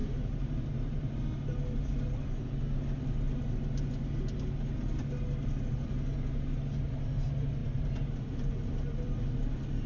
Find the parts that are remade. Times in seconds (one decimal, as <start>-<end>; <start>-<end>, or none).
0.0-1.2; 7.6-8.7

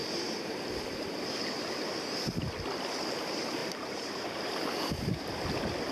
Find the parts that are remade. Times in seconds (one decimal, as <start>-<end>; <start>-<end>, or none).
0.0-1.4; 3.6-5.1

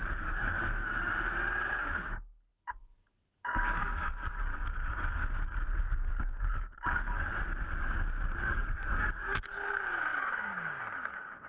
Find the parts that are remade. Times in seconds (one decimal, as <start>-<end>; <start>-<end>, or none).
0.0-0.8; 1.8-11.5

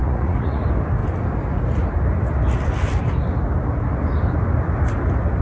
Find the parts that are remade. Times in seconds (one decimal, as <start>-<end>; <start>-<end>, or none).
0.0-0.6

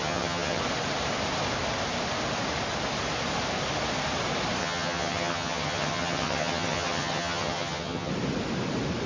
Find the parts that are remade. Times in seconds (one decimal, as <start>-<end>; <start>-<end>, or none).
0.0-0.6; 4.6-8.1

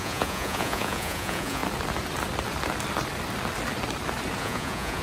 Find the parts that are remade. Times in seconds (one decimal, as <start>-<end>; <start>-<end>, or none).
0.0-1.6; 4.4-5.0

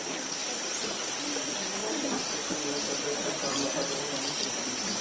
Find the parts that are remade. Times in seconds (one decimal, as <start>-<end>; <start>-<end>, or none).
none